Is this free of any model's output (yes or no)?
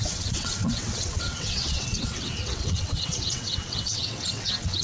no